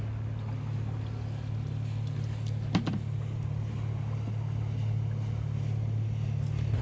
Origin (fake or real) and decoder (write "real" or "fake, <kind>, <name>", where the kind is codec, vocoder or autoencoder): real